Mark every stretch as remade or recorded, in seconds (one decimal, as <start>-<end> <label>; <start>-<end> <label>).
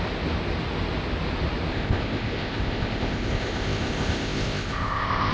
0.0-1.7 recorded; 1.7-5.3 remade